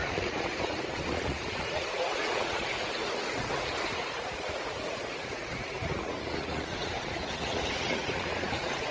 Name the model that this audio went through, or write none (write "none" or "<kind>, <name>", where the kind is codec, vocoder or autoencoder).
vocoder, Vocos